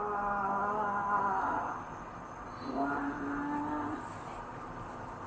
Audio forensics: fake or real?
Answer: real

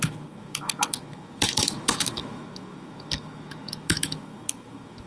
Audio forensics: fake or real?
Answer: fake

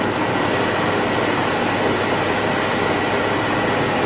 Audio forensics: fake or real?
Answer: real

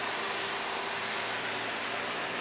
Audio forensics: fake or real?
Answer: real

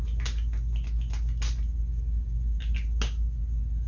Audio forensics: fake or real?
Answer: real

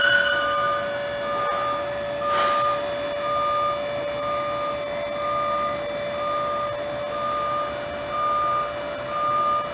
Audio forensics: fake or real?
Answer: real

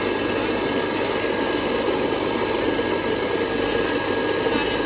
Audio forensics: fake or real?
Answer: real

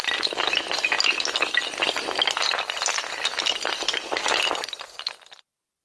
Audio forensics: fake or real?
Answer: real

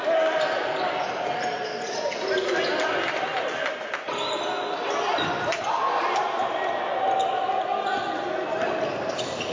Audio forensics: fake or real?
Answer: real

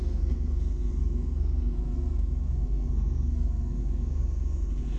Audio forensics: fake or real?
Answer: fake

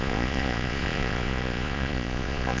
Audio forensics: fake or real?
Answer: fake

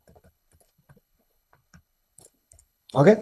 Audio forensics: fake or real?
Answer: fake